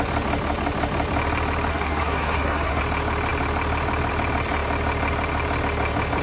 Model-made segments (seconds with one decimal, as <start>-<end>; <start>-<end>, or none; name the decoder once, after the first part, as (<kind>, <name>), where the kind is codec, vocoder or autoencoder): 1.7-2.8 (codec, SNAC)